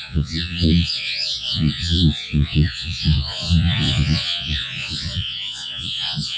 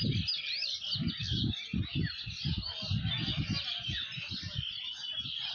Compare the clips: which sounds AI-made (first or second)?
first